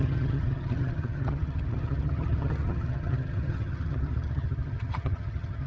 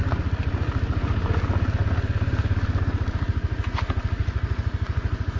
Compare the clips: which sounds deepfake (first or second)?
first